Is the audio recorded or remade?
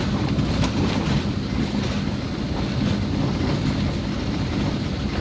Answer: recorded